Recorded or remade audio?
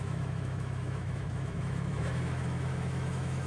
remade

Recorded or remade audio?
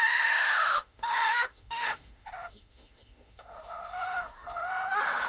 remade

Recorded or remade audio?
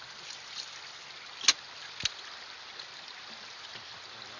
recorded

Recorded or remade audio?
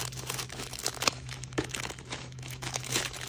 remade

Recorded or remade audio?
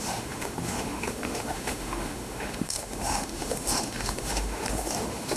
remade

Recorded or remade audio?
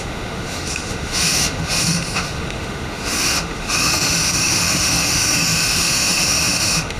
remade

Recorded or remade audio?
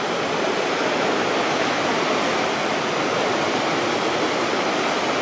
recorded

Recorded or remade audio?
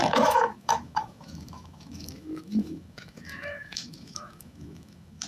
remade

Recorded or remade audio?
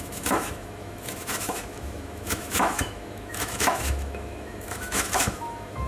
remade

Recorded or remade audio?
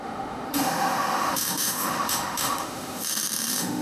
remade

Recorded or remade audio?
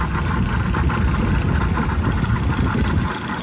recorded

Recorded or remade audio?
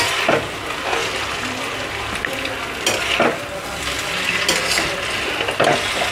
recorded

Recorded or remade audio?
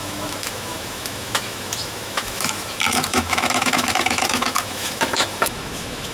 remade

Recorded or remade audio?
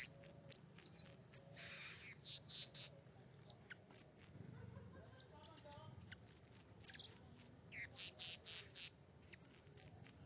recorded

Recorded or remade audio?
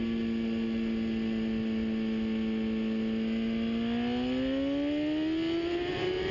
recorded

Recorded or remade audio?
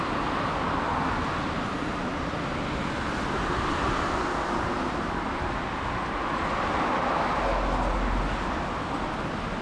recorded